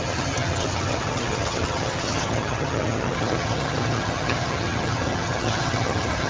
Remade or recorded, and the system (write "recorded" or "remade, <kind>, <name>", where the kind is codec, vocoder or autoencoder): remade, vocoder, HiFi-GAN